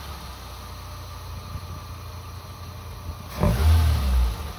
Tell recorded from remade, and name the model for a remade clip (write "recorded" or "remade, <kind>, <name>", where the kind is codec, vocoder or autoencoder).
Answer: recorded